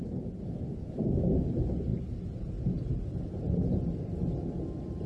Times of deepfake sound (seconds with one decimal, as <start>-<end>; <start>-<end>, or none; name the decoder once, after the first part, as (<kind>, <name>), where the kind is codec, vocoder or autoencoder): none